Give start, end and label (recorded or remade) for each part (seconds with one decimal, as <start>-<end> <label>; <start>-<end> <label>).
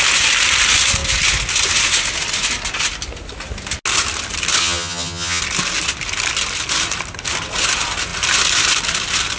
0.0-4.6 recorded; 4.6-5.4 remade; 5.4-9.4 recorded